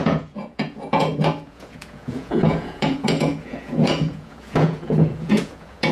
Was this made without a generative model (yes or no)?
no